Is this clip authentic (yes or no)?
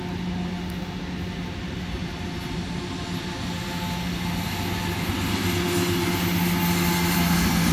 yes